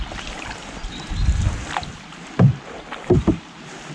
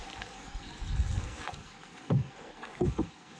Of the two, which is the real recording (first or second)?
first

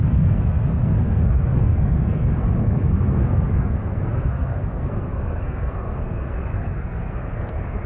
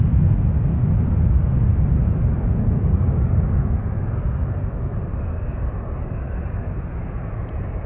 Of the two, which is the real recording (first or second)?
second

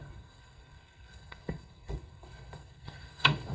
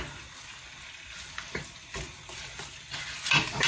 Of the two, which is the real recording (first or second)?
second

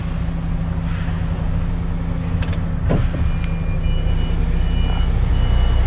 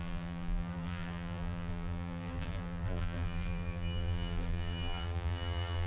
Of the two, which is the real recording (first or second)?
first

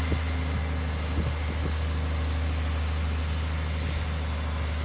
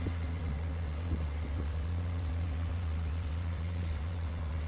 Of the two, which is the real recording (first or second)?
first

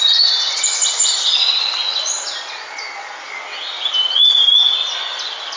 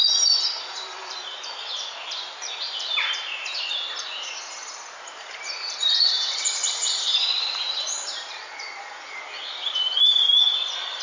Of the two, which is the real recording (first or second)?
first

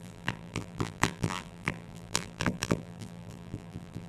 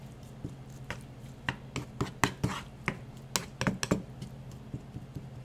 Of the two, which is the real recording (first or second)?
second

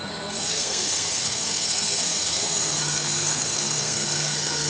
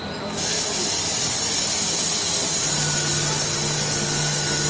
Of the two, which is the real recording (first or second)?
second